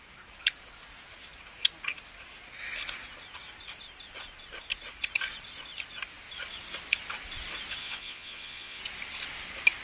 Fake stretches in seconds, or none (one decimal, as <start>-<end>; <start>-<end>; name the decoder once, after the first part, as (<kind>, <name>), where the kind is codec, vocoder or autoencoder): 7.8-8.8 (vocoder, Vocos)